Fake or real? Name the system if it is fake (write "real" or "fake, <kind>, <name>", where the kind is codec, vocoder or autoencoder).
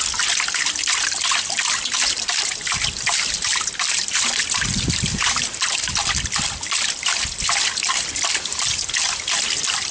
fake, vocoder, BigVGAN v2